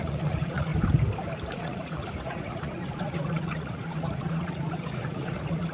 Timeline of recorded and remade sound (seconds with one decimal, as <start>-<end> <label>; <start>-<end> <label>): 0.0-0.7 remade; 0.7-1.5 recorded; 1.5-5.7 remade